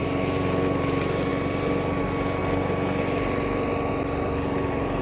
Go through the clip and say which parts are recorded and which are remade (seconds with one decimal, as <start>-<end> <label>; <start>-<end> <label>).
0.0-5.0 recorded